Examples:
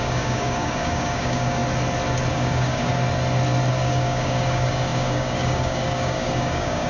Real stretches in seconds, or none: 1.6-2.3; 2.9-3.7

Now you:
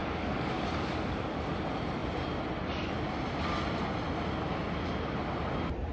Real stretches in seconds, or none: 1.5-5.9

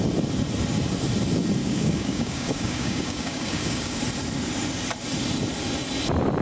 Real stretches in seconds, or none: 0.0-1.6; 4.0-6.4

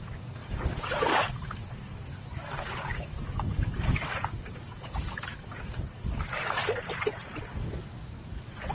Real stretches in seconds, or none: 6.6-7.5

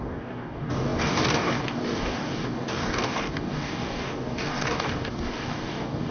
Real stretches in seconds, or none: none